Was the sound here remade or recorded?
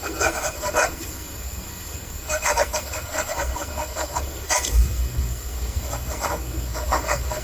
remade